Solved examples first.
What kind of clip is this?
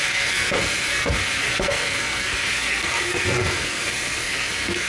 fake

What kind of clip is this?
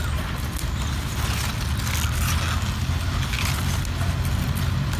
real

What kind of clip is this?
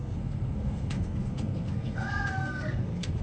fake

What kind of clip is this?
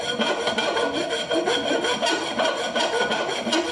real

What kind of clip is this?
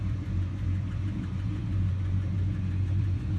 fake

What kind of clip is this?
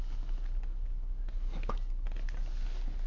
real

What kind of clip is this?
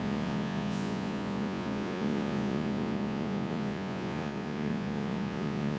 fake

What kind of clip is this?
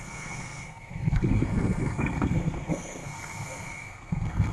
fake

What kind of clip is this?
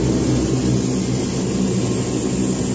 real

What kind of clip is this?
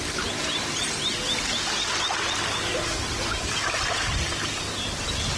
real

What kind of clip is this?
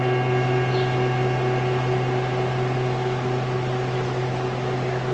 real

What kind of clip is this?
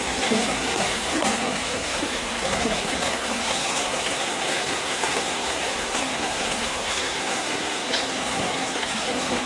fake